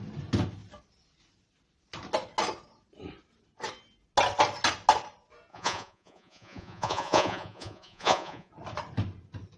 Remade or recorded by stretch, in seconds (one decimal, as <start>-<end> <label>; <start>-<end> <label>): 0.0-5.5 recorded; 5.5-8.5 remade; 8.5-9.6 recorded